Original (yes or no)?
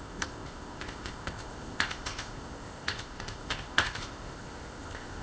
no